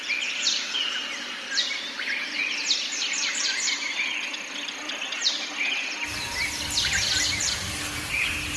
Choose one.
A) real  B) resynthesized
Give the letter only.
A